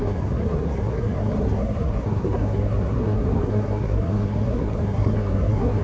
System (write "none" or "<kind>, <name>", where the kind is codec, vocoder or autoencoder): codec, SNAC